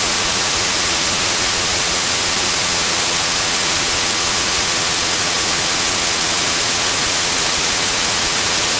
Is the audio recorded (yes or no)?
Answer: no